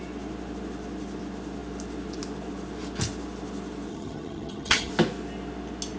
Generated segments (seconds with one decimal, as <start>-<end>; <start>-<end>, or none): 3.9-4.9

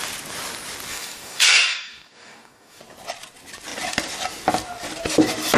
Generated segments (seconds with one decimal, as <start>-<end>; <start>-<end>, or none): 0.9-2.8

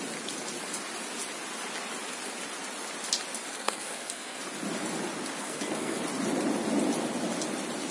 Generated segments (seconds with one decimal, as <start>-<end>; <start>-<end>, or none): 3.5-4.4; 5.4-6.0

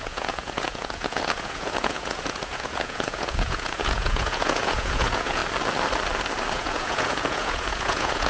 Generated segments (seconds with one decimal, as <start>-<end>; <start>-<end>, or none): 0.0-5.4; 6.5-8.3

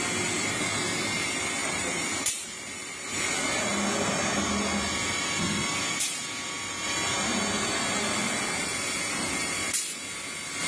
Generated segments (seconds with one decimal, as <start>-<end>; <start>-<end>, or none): 1.6-3.2